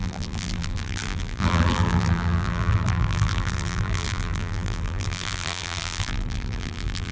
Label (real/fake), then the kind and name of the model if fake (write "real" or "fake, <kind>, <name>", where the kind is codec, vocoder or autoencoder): fake, vocoder, BigVGAN v2